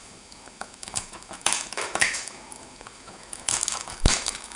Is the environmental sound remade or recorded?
remade